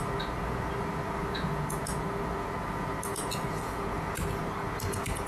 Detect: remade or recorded recorded